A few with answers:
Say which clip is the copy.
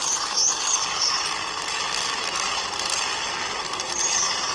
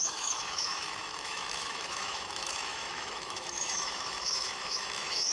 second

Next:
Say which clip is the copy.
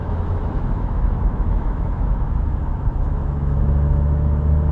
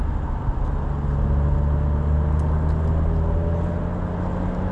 first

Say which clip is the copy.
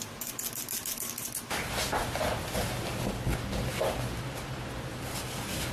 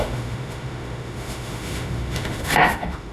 second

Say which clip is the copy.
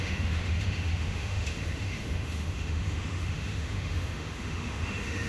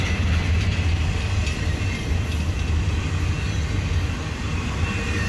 first